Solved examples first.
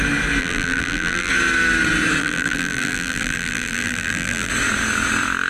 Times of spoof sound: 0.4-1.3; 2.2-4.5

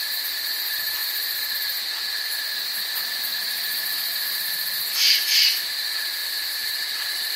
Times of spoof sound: 3.3-4.4